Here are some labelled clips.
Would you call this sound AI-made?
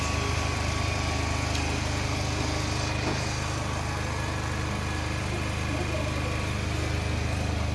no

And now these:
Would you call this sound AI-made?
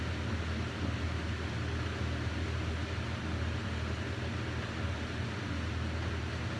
no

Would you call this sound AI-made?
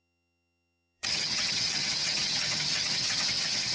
yes